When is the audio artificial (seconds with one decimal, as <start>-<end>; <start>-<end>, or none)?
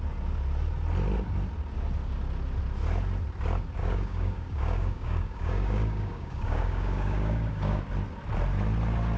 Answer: 3.8-7.8